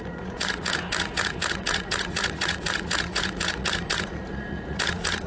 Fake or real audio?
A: fake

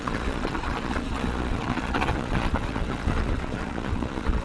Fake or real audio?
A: fake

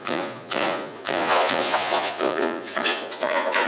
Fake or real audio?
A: fake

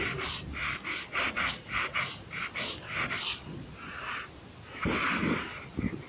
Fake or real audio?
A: real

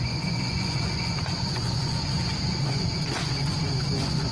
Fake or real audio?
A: fake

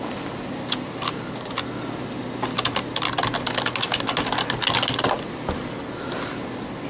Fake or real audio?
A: real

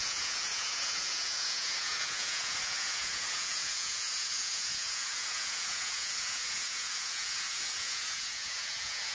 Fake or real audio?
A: fake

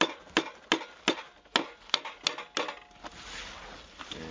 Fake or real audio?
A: real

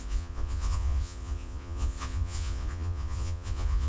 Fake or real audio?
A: fake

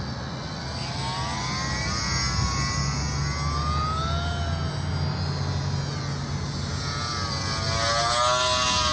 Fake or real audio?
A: real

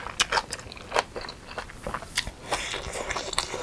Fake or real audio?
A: real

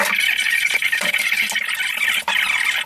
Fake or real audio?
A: real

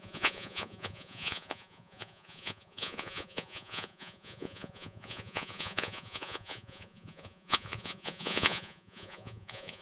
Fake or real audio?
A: fake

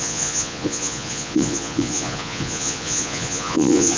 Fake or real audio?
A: fake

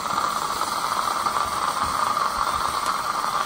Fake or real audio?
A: real